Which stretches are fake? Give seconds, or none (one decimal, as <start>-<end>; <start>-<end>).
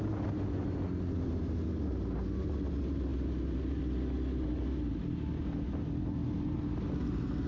none